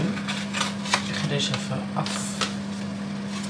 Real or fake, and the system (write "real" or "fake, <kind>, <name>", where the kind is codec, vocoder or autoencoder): real